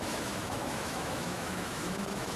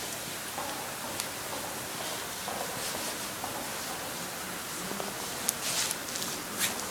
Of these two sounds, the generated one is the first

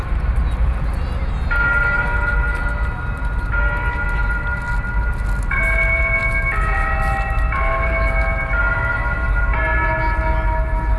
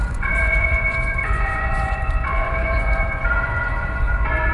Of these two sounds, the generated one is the second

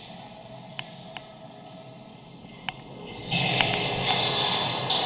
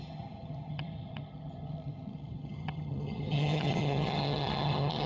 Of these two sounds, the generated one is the second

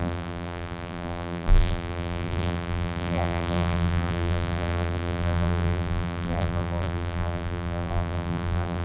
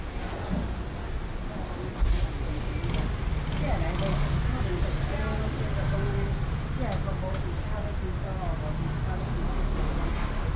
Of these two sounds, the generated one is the first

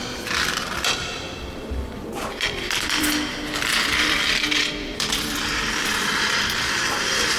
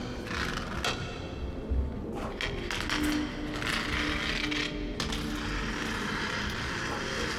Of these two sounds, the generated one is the first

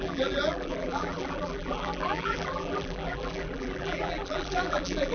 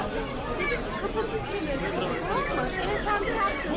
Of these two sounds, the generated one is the first